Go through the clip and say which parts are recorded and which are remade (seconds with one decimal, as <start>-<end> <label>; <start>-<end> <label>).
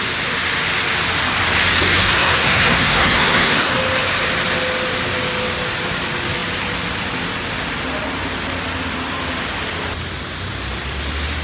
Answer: 0.0-1.9 recorded; 1.9-3.7 remade; 3.7-11.4 recorded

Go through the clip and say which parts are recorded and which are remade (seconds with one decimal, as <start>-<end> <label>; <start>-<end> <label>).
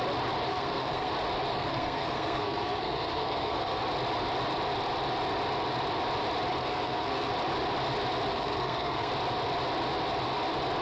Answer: 0.0-0.5 recorded; 0.5-1.1 remade; 1.1-1.5 recorded; 1.5-3.8 remade; 3.8-6.6 recorded; 6.6-7.3 remade; 7.3-8.3 recorded; 8.3-9.1 remade; 9.1-10.8 recorded